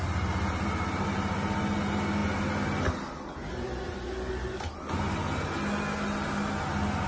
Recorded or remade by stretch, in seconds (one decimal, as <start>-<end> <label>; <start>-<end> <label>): 0.0-7.1 recorded